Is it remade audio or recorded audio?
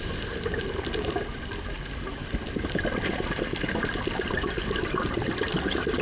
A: remade